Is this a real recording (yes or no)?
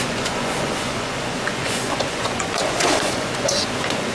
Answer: no